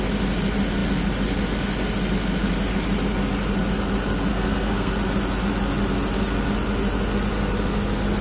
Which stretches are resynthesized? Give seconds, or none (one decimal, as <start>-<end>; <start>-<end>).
4.3-4.9